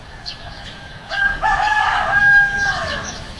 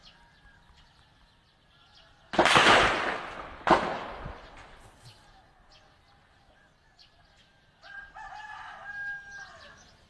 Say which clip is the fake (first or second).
first